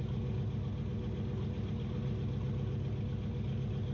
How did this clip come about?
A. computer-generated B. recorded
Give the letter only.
B